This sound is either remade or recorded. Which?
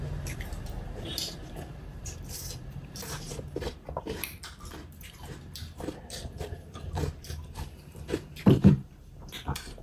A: remade